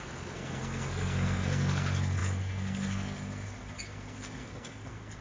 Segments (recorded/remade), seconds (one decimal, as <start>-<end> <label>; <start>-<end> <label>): 0.0-5.2 remade